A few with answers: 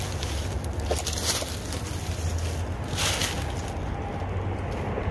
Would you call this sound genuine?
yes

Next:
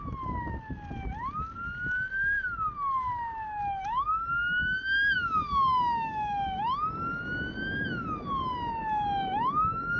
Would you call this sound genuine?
yes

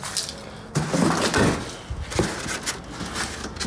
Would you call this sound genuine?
yes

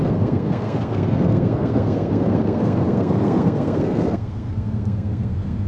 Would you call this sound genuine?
no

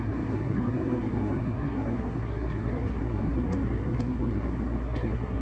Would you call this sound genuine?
no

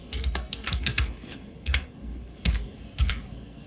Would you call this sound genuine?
no